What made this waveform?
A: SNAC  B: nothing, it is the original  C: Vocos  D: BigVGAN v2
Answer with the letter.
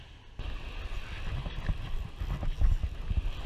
B